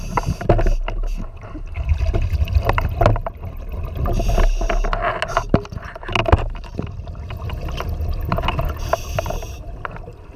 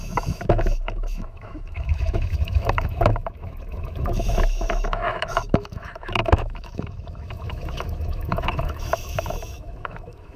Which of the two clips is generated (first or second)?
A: second